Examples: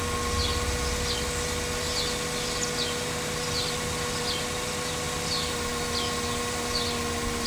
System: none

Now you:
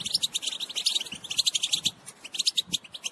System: none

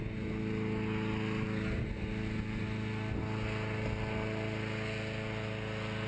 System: none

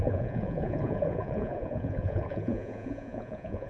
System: vocoder, Vocos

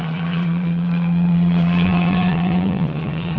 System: vocoder, Vocos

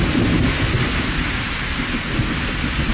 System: none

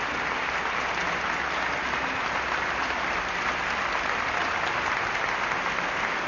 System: none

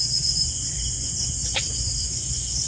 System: vocoder, Vocos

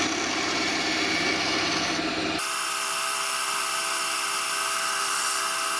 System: none